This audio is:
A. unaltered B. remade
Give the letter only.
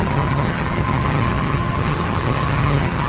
B